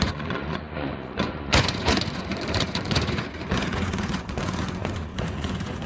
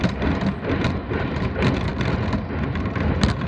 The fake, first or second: first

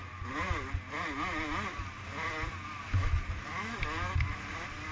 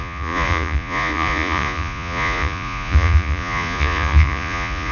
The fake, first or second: second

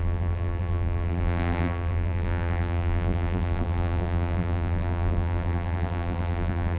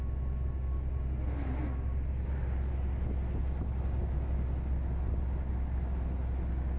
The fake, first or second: first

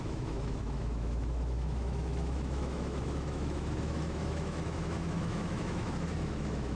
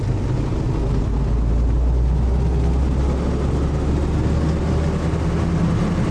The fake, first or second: first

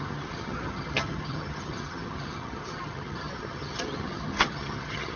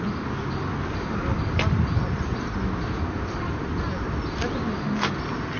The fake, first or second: first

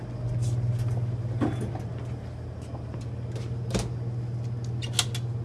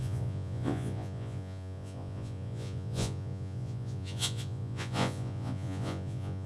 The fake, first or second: second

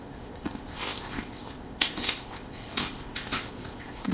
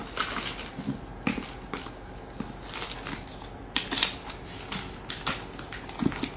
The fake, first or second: first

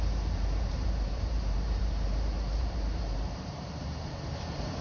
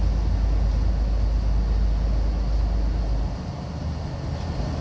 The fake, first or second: first